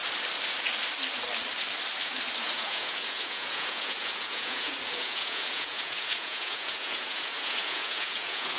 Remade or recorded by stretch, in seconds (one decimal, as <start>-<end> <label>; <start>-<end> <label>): 0.0-2.4 recorded; 2.4-8.6 remade